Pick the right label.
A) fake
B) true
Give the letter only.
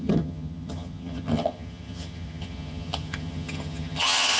A